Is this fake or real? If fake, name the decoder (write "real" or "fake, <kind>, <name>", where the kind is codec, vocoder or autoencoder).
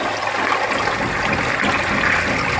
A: real